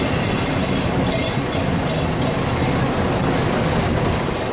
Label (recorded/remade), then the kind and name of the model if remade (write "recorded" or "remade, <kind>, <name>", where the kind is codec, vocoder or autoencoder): remade, vocoder, BigVGAN v2